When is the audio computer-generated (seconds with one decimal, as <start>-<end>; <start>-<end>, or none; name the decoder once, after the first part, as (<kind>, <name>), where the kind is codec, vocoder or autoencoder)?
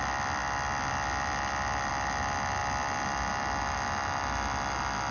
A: none